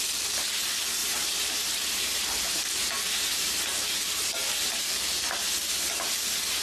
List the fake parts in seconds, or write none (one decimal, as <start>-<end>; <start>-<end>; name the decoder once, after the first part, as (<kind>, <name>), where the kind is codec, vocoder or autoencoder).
1.0-4.9 (vocoder, BigVGAN v2)